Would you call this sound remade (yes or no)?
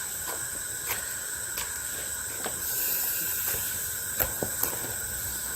no